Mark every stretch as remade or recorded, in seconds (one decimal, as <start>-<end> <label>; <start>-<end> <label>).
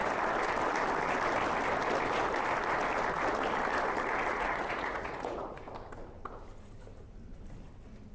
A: 0.0-4.3 recorded; 4.3-5.6 remade; 5.6-8.1 recorded